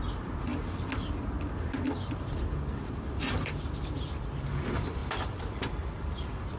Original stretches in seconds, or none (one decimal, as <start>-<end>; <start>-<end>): 0.5-2.2